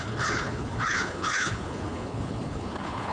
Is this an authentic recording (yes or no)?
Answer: no